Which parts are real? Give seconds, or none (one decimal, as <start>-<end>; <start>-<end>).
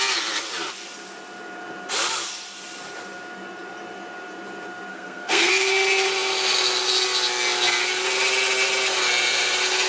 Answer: 0.0-4.9; 5.5-9.9